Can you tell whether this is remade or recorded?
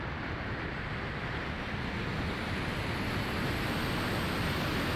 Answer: recorded